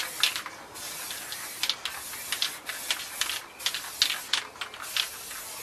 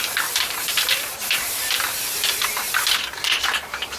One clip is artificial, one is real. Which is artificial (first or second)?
second